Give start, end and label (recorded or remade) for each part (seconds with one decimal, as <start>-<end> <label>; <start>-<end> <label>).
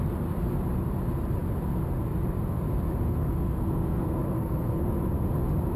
0.0-3.2 recorded; 3.2-4.8 remade; 4.8-5.8 recorded